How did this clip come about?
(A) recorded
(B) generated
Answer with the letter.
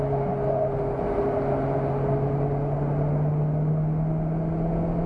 A